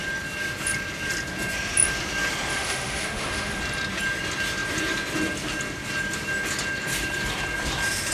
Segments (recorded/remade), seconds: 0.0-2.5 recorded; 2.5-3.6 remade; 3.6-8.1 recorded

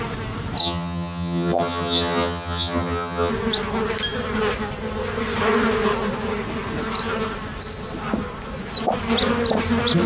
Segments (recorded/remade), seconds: 0.0-0.6 recorded; 0.6-3.3 remade; 3.3-10.1 recorded

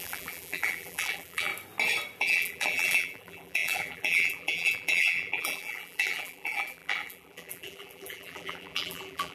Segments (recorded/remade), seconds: 0.0-1.5 remade; 1.5-2.2 recorded; 2.2-9.3 remade

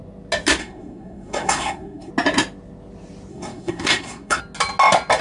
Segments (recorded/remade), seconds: 0.0-0.6 recorded; 0.6-2.1 remade; 2.1-3.3 recorded; 3.3-4.4 remade; 4.4-5.2 recorded

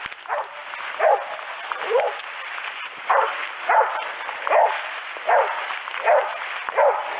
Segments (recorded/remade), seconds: 0.0-7.2 recorded

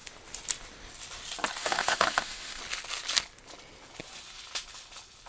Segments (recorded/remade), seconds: 0.0-1.6 recorded; 1.6-2.6 remade; 2.6-5.3 recorded

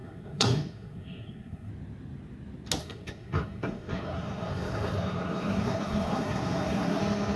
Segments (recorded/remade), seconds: 0.0-1.7 remade; 1.7-2.8 recorded; 2.8-7.0 remade; 7.0-7.4 recorded